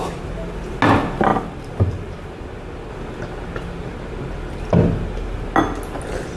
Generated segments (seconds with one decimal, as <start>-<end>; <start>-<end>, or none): none